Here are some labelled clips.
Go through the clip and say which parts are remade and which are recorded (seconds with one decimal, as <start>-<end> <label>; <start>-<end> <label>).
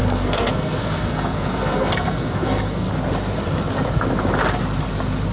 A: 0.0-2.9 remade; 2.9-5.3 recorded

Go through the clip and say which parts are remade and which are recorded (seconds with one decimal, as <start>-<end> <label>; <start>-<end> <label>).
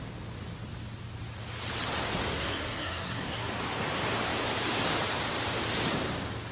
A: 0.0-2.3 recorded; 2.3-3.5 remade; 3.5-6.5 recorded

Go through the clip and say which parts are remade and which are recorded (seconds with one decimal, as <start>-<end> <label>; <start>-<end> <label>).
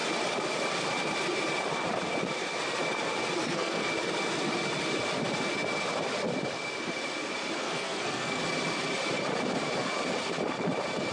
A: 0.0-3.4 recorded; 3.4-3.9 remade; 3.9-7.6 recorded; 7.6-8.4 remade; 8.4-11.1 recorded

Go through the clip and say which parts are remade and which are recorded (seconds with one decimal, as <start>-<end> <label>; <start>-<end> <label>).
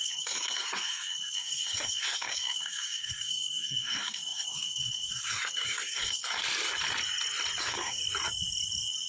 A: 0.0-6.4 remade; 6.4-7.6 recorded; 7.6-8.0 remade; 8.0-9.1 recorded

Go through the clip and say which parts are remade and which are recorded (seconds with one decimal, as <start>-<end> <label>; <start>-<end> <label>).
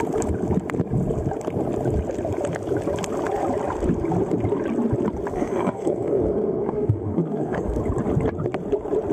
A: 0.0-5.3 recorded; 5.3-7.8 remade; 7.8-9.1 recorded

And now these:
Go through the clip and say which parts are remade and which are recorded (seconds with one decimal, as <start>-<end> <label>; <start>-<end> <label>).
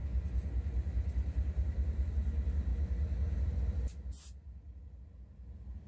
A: 0.0-5.9 recorded